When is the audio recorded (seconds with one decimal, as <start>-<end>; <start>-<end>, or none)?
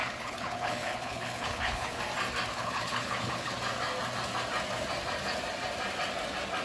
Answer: 2.0-2.5; 3.5-6.6